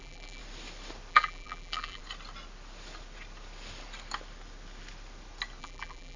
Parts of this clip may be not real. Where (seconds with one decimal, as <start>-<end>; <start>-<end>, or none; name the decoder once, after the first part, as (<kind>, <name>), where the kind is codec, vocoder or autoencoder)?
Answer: 0.0-0.4 (vocoder, BigVGAN v2); 1.1-2.0; 5.6-6.2